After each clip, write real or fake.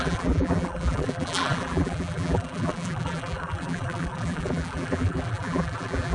fake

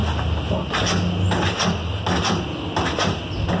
real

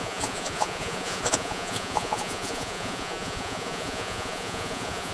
fake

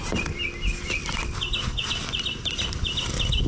real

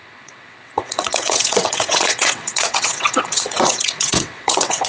fake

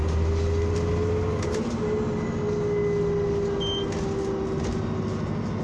real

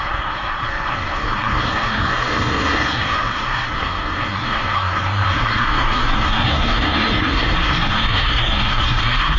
fake